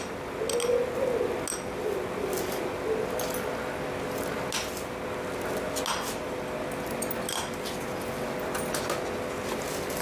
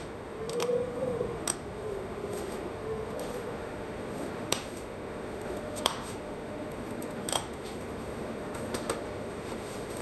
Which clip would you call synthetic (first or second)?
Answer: second